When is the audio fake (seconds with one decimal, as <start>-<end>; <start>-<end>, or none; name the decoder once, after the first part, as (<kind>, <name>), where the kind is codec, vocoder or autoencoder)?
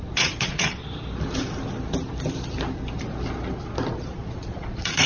0.0-0.8 (vocoder, Vocos); 3.9-5.1